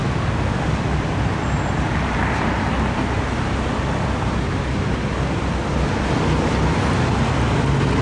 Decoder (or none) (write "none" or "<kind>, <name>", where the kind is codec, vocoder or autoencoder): none